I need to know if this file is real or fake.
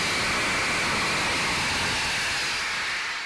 real